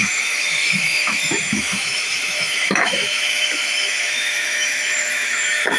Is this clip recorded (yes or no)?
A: no